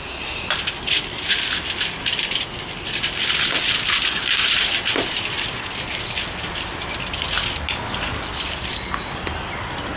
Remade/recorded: recorded